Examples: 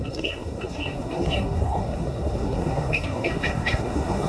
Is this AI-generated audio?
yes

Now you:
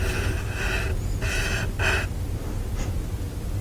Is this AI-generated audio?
no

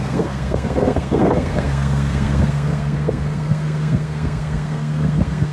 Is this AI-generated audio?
yes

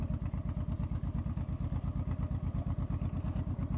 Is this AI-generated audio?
no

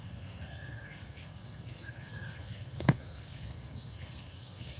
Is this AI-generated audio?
yes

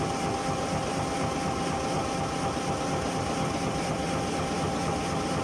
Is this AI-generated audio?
no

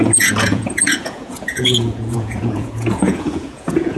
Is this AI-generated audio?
yes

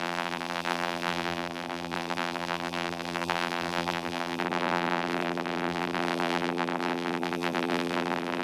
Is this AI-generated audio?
yes